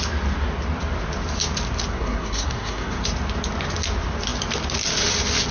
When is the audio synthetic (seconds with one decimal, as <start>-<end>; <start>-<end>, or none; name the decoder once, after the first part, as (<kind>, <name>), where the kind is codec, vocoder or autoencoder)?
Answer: 1.9-3.0 (codec, SNAC)